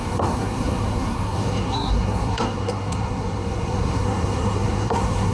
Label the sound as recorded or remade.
remade